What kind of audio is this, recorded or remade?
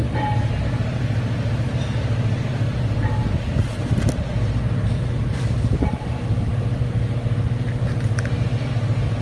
recorded